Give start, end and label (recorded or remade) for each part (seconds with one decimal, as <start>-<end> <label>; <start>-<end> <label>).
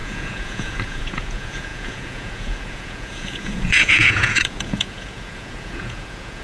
0.0-6.4 remade